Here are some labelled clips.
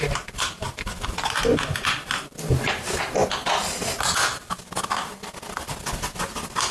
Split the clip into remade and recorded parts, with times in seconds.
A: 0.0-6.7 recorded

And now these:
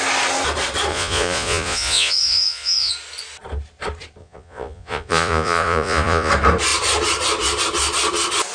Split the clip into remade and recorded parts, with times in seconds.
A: 0.0-0.9 recorded; 0.9-2.9 remade; 2.9-4.2 recorded; 4.2-6.3 remade; 6.3-8.5 recorded

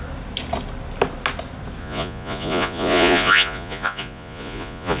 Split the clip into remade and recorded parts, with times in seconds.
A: 0.0-1.8 recorded; 1.8-5.0 remade

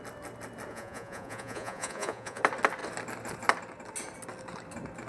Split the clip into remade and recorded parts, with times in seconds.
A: 0.0-0.7 recorded; 0.7-2.4 remade; 2.4-5.1 recorded

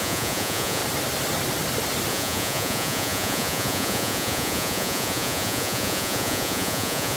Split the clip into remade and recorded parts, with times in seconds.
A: 0.0-0.8 remade; 0.8-2.1 recorded; 2.1-7.2 remade

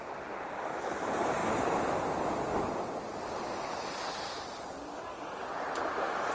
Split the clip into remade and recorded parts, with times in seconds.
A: 0.0-6.3 recorded

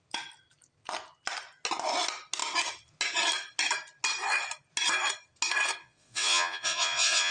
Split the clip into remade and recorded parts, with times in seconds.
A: 0.0-5.8 recorded; 5.8-7.3 remade

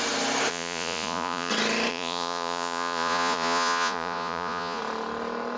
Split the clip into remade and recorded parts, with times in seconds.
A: 0.0-0.5 recorded; 0.5-1.5 remade; 1.5-1.9 recorded; 1.9-4.8 remade; 4.8-5.6 recorded